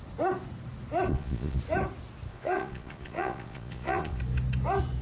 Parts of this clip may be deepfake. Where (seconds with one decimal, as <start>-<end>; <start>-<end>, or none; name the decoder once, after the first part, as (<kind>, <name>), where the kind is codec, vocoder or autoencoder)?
1.1-1.6 (vocoder, Vocos); 2.3-4.2